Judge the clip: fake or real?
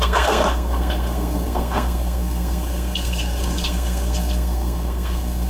fake